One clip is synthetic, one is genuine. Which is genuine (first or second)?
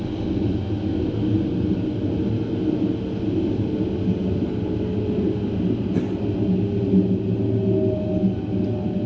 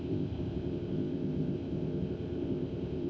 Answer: first